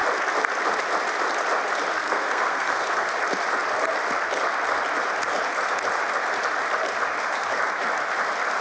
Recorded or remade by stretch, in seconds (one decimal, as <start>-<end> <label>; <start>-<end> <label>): 0.0-2.0 recorded; 2.0-3.1 remade; 3.1-8.6 recorded